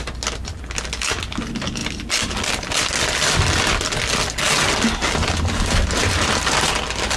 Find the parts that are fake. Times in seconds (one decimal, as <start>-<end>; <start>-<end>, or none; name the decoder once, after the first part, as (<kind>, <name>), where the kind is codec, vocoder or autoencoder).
none